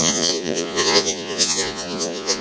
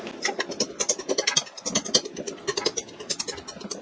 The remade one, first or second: first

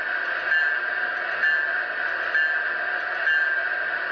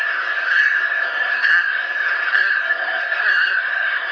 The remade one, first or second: second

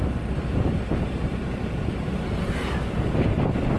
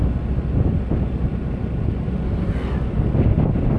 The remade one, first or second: first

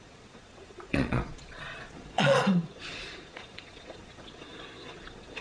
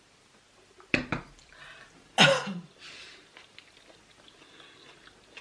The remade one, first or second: first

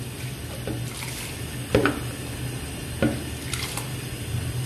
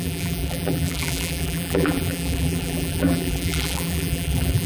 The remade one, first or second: second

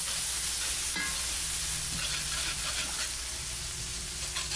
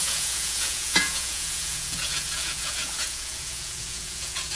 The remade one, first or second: second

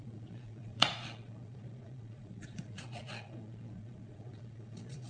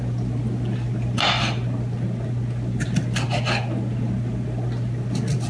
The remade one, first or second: first